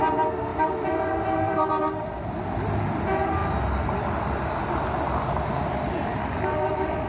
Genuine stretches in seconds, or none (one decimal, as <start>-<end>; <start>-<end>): 0.0-0.5; 1.7-7.1